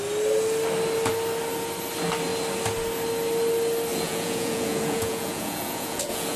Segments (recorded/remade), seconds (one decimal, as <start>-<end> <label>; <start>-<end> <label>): 0.0-3.9 recorded; 3.9-6.4 remade